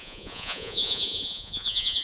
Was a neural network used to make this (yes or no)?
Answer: yes